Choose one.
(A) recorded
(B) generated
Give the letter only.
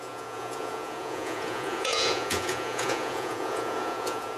B